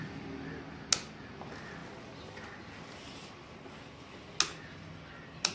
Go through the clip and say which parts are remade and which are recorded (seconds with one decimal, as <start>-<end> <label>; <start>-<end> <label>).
0.0-5.5 recorded